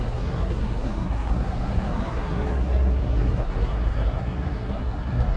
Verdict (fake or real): fake